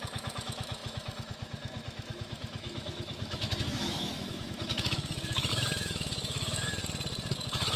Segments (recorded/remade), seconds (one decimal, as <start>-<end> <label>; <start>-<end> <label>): 0.0-6.8 remade; 6.8-7.3 recorded; 7.3-7.8 remade